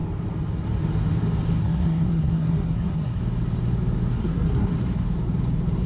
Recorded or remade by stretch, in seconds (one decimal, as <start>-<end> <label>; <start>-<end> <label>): 0.0-1.6 recorded; 1.6-3.2 remade; 3.2-4.1 recorded; 4.1-4.7 remade; 4.7-5.9 recorded